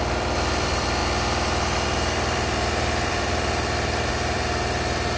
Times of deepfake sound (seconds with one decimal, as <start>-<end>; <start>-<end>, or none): 0.0-5.2